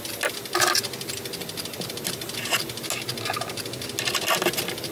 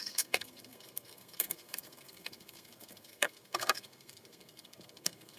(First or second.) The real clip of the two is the first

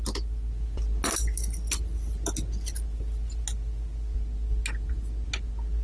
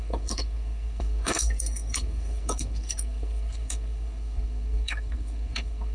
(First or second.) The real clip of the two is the first